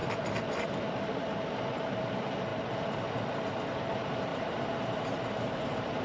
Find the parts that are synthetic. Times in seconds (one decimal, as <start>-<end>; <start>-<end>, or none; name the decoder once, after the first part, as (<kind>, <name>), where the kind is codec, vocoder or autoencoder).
4.3-6.0 (vocoder, BigVGAN v2)